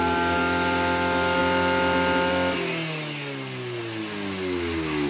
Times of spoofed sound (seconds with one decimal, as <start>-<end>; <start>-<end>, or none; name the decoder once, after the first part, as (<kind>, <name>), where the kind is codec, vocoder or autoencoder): none